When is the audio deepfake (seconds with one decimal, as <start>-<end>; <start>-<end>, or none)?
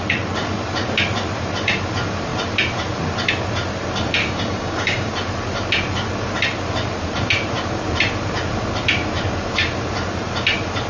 4.2-5.1